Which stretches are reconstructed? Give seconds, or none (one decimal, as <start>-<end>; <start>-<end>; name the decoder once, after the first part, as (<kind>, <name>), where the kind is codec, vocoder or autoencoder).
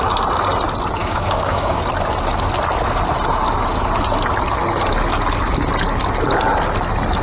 1.0-1.8 (codec, DAC)